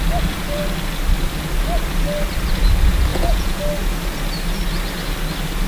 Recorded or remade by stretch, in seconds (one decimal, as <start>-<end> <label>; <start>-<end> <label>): 0.0-3.1 recorded; 3.1-3.6 remade; 3.6-5.7 recorded

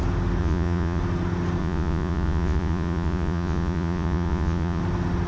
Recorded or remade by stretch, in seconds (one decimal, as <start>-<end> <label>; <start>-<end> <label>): 0.0-0.4 recorded; 0.4-1.0 remade; 1.0-1.6 recorded; 1.6-4.8 remade; 4.8-5.3 recorded

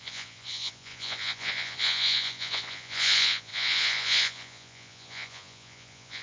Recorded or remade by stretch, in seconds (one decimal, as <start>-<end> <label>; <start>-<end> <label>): 0.0-6.2 remade

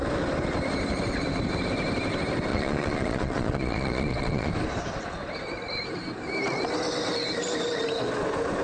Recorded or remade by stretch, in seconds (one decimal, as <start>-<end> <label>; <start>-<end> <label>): 0.0-2.5 recorded; 2.5-4.5 remade; 4.5-8.6 recorded

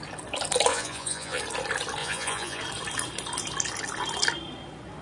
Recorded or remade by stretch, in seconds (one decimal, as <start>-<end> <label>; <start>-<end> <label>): 0.0-0.7 recorded; 0.7-1.4 remade; 1.4-2.0 recorded; 2.0-2.6 remade; 2.6-5.0 recorded

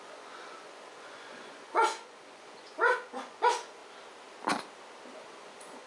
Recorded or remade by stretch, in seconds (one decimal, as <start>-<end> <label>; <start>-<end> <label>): 0.0-3.8 remade; 3.8-5.3 recorded; 5.3-5.9 remade

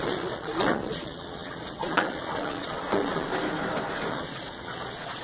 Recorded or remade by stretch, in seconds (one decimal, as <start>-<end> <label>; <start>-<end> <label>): 0.0-3.3 remade; 3.3-4.1 recorded; 4.1-5.2 remade

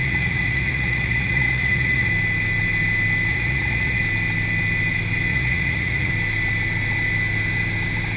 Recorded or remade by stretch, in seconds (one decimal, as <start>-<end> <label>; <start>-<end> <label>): 0.0-2.1 remade; 2.1-3.3 recorded; 3.3-4.0 remade; 4.0-5.3 recorded; 5.3-6.1 remade; 6.1-8.2 recorded